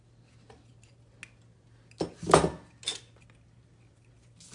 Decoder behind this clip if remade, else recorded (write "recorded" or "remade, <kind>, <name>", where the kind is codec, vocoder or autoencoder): recorded